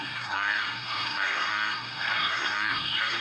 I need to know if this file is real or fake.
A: fake